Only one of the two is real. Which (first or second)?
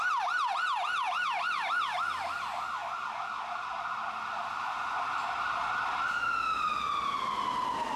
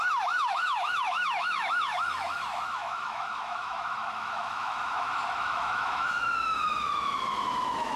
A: first